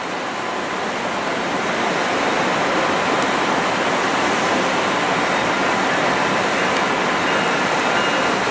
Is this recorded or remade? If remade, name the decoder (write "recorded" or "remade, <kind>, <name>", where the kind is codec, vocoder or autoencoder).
recorded